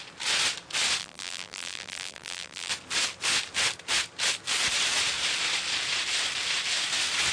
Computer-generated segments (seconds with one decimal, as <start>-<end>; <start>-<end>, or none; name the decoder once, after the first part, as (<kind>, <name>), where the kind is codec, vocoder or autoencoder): 1.0-2.7 (vocoder, BigVGAN v2)